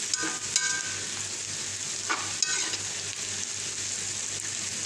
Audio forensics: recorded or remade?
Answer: recorded